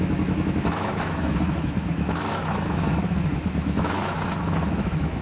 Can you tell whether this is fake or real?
fake